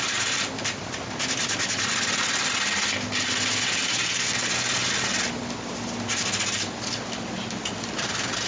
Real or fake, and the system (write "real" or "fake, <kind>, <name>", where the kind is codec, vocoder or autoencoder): real